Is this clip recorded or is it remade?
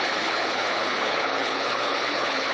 remade